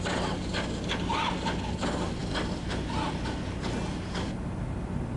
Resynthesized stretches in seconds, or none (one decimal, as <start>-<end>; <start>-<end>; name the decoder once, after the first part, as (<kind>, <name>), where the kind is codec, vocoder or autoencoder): none